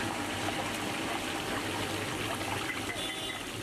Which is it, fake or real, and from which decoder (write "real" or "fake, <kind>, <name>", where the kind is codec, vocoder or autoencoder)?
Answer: real